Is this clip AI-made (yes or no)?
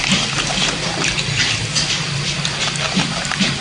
no